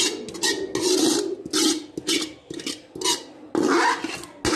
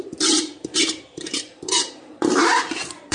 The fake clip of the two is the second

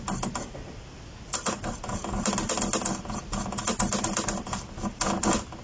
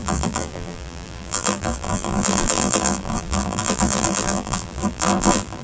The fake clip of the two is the second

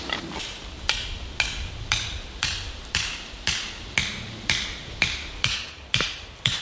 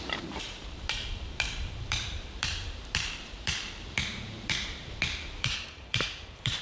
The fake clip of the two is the second